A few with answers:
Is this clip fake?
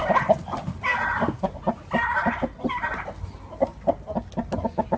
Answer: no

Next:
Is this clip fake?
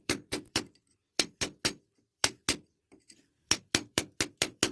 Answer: yes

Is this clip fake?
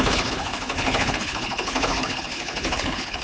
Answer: yes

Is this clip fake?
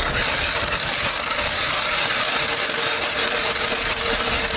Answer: no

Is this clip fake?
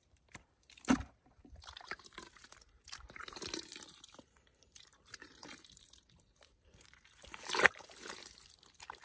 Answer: yes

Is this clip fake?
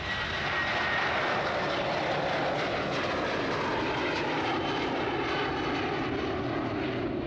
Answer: no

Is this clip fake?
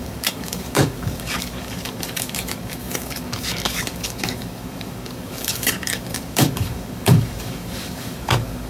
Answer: yes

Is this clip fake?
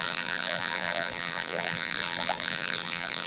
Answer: yes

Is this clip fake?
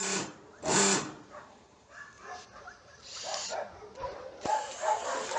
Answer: yes